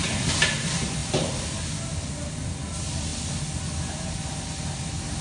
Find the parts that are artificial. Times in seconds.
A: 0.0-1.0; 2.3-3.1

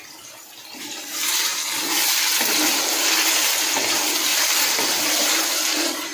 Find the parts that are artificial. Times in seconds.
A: 4.3-5.2

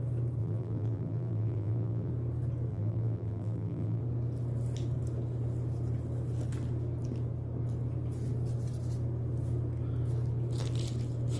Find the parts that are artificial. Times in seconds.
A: 0.4-2.1; 2.7-4.0

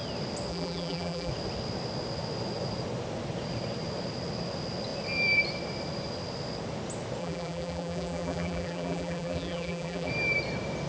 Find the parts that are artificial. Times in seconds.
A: 0.5-1.3; 7.2-10.1

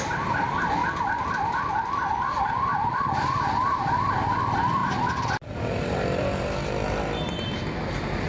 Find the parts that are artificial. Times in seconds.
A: 0.8-1.7; 2.7-4.1

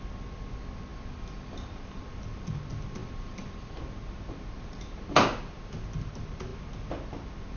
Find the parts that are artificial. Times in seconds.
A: 0.9-2.0; 3.0-3.8

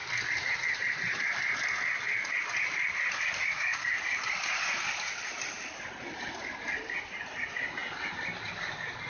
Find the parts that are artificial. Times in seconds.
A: 3.7-4.3

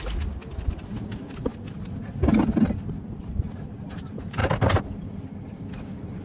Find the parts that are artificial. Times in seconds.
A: none